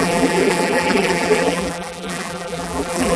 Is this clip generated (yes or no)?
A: yes